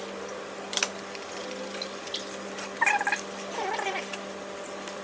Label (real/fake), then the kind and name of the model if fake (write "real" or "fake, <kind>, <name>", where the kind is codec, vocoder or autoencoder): real